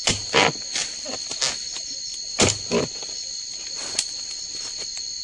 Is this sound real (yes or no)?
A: yes